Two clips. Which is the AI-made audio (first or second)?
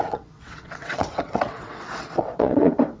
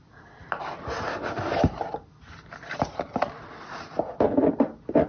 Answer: first